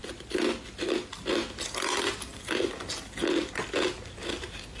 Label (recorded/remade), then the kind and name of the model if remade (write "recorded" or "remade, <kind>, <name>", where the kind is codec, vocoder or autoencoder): recorded